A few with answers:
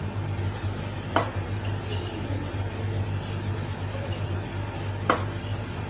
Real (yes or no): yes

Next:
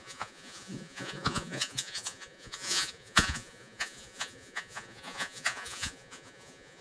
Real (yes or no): no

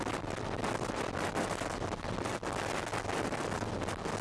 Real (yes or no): yes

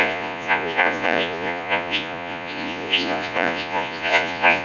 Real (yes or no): no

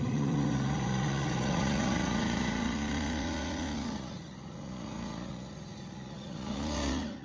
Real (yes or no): no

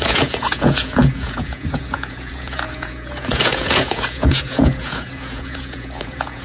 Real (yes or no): no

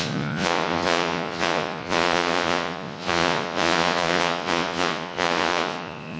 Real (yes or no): no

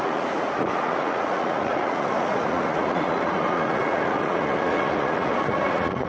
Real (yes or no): no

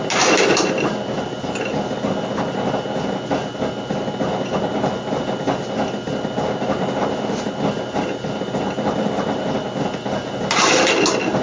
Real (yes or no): yes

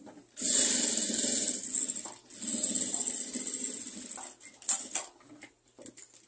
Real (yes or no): yes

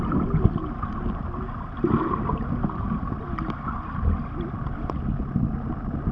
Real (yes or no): yes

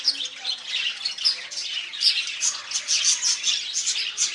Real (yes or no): yes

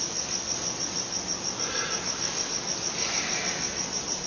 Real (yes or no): yes